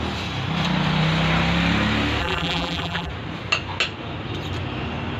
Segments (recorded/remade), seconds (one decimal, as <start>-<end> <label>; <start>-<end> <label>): 0.0-2.2 recorded; 2.2-3.1 remade; 3.1-5.2 recorded